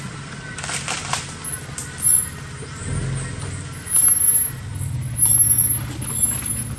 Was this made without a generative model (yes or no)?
yes